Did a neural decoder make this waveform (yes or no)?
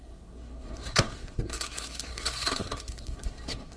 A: yes